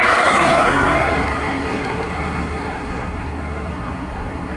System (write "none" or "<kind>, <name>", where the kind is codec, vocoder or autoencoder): codec, SNAC